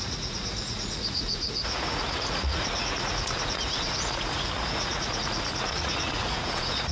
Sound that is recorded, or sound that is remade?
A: remade